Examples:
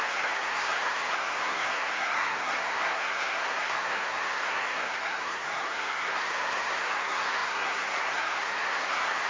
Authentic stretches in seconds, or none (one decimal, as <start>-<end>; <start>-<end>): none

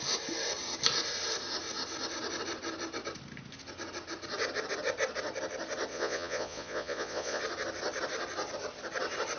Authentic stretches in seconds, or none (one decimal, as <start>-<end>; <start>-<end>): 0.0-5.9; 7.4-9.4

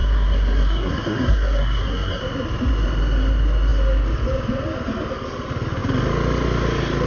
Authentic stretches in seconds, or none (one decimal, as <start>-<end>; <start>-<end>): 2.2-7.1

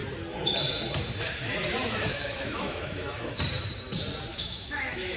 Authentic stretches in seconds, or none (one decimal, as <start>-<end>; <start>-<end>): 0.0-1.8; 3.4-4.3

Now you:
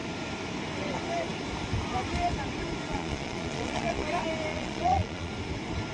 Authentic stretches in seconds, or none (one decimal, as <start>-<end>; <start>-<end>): 0.0-2.9; 4.1-4.5; 5.3-5.9

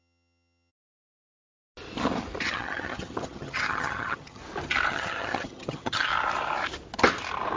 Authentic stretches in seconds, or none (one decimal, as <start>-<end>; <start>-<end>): 0.7-2.4; 4.4-4.9; 6.1-7.6

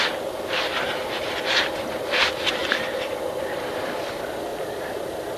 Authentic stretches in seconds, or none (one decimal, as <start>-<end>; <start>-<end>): 0.0-2.6; 3.1-4.5; 5.0-5.4

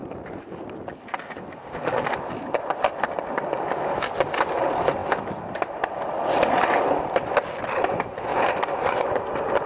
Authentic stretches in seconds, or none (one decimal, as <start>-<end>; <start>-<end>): 0.6-8.3